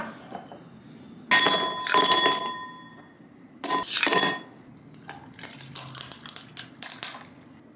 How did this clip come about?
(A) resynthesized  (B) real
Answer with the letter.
B